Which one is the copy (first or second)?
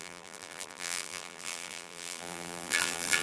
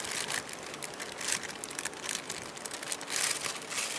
first